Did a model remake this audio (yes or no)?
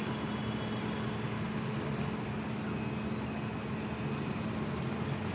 no